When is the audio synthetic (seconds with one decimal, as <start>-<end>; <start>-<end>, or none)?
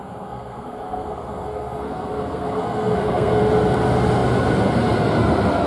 0.0-3.4